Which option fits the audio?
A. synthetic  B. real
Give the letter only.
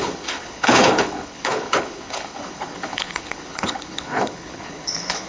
A